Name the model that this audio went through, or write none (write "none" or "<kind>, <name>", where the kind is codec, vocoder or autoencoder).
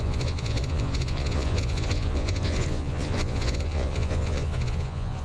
vocoder, Vocos